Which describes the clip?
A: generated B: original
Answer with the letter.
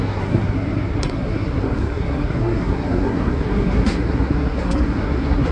A